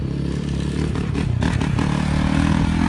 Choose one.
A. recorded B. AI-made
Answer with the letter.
A